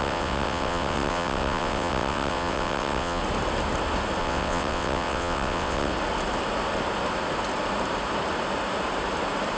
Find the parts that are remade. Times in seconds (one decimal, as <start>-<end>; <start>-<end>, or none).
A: 0.0-3.2; 4.2-5.9